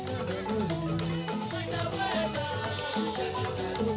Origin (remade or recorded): recorded